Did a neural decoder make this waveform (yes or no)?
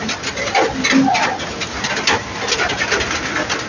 no